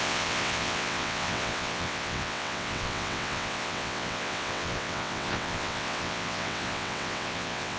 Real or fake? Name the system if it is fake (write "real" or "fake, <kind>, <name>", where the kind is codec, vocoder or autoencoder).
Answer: fake, vocoder, WaveNeXt